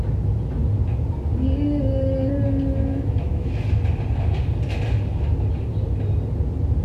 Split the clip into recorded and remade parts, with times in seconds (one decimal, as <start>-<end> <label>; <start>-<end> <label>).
0.0-2.9 recorded; 2.9-3.5 remade; 3.5-6.8 recorded